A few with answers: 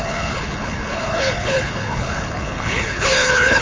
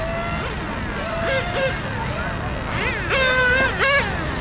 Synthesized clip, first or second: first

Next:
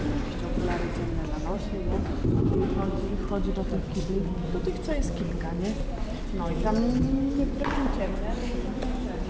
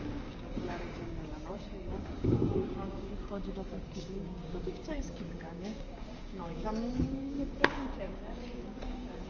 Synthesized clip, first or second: second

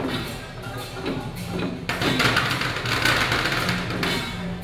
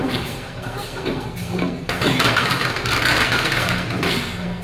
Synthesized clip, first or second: second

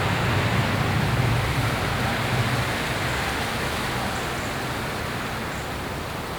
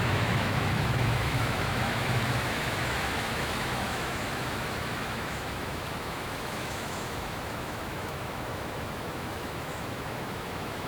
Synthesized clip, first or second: second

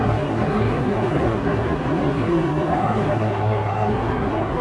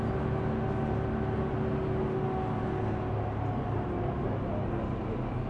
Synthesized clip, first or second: first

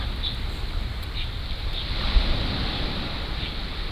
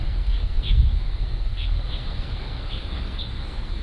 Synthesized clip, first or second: second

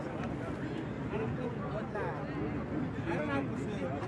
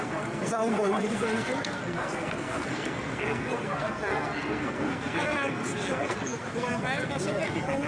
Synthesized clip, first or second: second